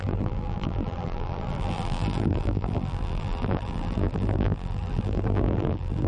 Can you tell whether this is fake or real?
fake